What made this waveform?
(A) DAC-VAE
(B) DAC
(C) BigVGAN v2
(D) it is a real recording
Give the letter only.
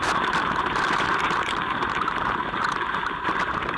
C